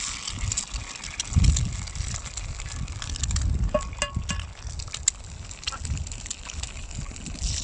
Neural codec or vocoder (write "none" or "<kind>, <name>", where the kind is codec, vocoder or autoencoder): none